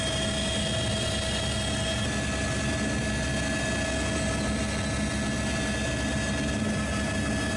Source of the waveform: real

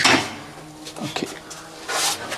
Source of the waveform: real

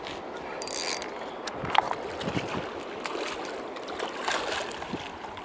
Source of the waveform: real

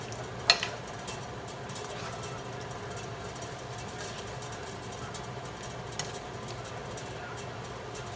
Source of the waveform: real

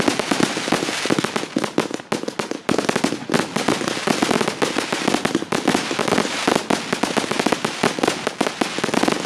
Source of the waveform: real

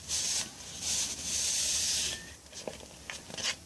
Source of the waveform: real